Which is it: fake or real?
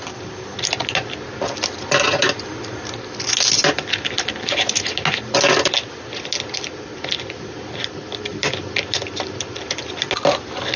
real